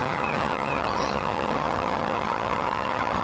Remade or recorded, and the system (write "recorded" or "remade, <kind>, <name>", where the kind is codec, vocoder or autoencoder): remade, vocoder, HiFi-GAN